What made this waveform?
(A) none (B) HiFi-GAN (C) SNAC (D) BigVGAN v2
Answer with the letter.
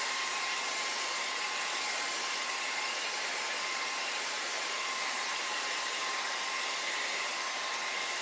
D